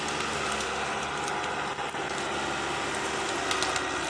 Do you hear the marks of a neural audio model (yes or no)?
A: no